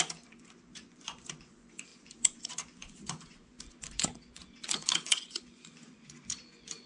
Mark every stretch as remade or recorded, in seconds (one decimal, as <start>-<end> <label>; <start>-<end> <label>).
0.0-6.9 remade